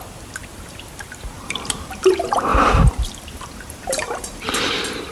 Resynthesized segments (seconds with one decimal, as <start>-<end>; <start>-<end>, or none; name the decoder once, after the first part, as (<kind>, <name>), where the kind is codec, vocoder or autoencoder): 0.4-2.1 (vocoder, BigVGAN v2); 2.5-4.6